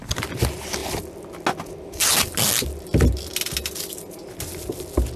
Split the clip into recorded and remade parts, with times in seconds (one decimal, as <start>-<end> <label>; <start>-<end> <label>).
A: 0.0-5.2 recorded